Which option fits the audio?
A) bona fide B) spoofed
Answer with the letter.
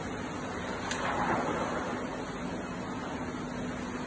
A